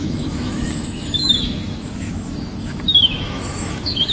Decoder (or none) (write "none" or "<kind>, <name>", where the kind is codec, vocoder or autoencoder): autoencoder, DAC-VAE